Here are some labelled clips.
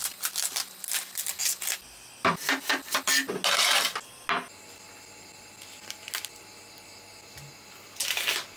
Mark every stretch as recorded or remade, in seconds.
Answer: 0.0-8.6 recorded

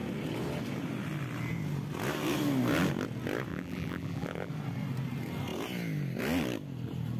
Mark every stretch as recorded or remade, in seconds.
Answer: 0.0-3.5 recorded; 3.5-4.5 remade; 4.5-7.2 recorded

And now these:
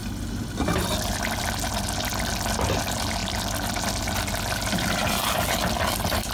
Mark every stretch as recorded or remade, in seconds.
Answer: 0.0-6.3 recorded

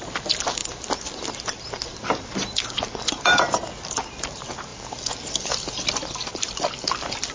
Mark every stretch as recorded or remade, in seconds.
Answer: 0.0-0.6 recorded; 0.6-1.3 remade; 1.3-1.9 recorded; 1.9-3.8 remade; 3.8-4.7 recorded; 4.7-5.7 remade; 5.7-7.3 recorded